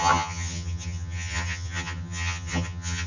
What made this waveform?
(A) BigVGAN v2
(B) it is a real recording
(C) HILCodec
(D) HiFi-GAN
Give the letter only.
D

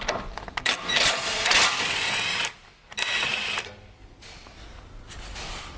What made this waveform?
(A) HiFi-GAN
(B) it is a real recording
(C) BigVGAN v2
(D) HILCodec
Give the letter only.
B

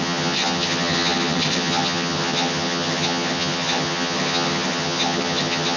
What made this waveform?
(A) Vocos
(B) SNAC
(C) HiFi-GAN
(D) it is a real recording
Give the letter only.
C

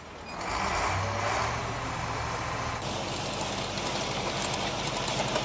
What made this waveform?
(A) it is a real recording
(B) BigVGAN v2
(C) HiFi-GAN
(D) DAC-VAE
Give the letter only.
A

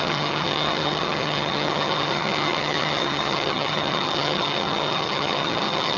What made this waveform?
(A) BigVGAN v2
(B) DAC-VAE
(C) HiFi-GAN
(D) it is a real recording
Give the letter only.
C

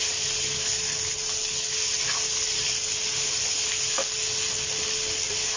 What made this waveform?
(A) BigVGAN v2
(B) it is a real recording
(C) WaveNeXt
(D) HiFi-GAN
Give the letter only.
B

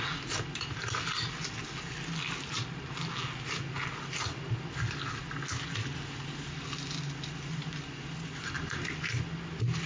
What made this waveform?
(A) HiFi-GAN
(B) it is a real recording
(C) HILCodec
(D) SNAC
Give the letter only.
B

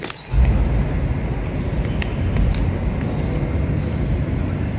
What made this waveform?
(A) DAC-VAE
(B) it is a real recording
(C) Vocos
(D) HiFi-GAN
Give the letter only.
B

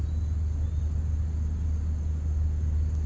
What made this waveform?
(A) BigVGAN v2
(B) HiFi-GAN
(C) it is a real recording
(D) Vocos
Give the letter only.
C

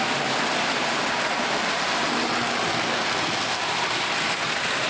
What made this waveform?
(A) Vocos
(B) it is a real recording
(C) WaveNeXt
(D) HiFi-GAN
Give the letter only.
B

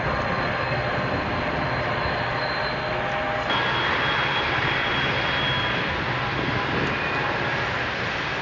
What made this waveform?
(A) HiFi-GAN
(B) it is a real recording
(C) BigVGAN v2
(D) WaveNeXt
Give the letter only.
B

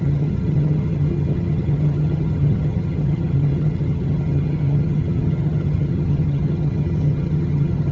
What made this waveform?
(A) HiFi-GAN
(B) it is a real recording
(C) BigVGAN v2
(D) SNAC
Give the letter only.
A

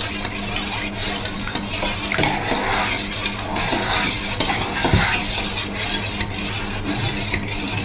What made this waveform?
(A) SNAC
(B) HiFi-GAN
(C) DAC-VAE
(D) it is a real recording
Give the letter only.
D